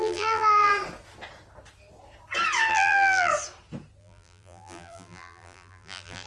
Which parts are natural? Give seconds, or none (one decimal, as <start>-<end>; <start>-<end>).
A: 0.7-2.7; 3.3-4.0